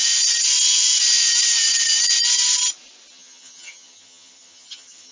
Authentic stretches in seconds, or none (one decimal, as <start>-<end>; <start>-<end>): 0.0-3.1